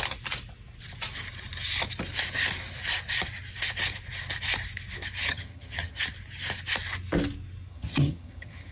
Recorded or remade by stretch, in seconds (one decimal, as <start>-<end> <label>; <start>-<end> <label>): 0.0-5.2 recorded; 5.2-6.0 remade; 6.0-7.7 recorded; 7.7-8.7 remade